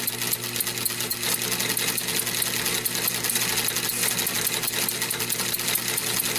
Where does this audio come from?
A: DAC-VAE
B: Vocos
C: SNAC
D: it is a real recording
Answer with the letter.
D